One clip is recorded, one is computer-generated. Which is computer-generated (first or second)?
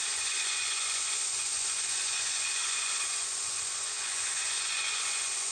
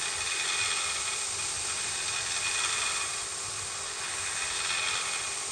first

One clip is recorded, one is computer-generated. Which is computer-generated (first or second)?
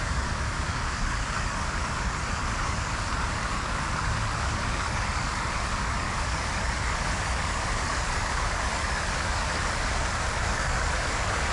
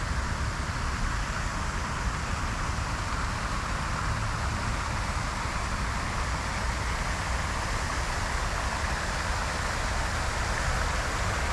first